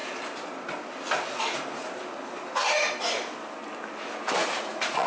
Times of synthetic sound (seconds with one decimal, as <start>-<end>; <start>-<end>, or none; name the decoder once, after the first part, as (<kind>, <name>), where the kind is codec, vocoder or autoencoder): 4.4-5.1 (vocoder, Vocos)